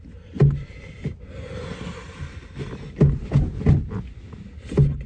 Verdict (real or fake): real